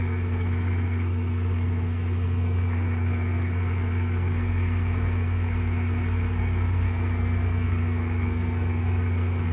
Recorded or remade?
remade